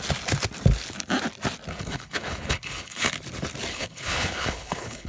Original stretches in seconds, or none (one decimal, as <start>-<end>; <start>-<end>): 0.0-1.7; 3.1-3.7